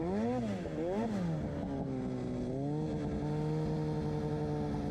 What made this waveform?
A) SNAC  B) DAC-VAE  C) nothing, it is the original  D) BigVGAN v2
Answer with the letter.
C